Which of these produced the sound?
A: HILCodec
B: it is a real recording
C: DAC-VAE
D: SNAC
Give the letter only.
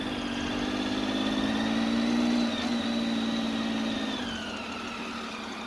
B